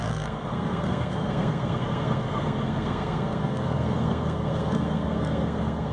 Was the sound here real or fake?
fake